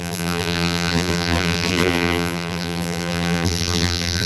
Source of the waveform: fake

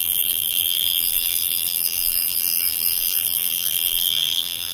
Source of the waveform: fake